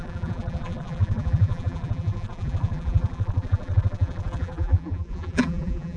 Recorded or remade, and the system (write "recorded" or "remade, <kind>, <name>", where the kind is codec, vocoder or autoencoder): remade, vocoder, BigVGAN v2